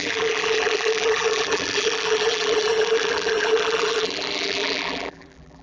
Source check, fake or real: fake